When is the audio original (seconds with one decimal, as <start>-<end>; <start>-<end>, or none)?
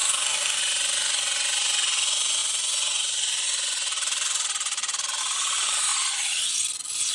0.6-7.1